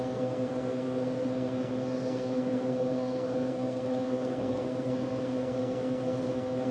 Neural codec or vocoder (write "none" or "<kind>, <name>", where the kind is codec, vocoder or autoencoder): codec, SNAC